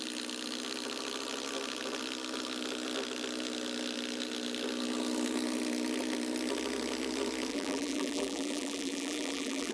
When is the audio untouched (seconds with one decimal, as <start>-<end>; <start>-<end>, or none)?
0.0-7.5